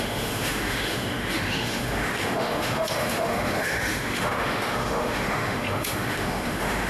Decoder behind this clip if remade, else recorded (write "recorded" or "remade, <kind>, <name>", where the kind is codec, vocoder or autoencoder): remade, autoencoder, DAC-VAE